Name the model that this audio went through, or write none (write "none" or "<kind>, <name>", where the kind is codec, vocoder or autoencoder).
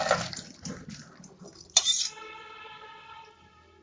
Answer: vocoder, BigVGAN v2